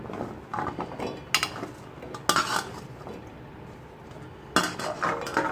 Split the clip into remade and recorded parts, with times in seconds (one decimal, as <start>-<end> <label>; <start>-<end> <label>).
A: 0.0-5.5 recorded